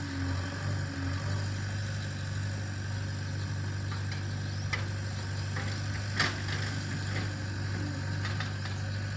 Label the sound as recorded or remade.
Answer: recorded